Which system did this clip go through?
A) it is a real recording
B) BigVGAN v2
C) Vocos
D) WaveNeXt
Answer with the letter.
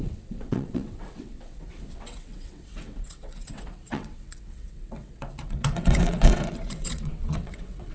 D